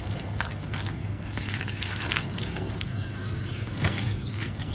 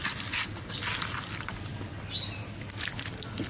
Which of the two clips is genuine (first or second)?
second